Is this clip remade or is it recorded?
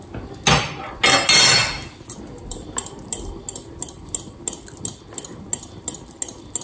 recorded